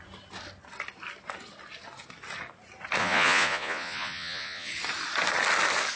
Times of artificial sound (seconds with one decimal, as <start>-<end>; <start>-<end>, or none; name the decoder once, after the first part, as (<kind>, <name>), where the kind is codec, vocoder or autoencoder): 3.0-4.7 (vocoder, Vocos)